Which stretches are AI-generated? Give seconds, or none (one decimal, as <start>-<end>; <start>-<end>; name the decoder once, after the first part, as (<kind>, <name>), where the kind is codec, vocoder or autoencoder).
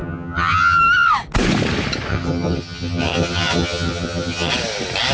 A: 0.0-0.8 (vocoder, HiFi-GAN); 2.1-4.5